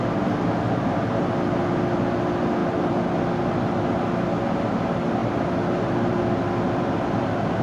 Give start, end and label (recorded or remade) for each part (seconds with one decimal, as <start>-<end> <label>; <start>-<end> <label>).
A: 0.0-2.6 recorded; 2.6-3.2 remade; 3.2-5.2 recorded; 5.2-6.2 remade; 6.2-7.6 recorded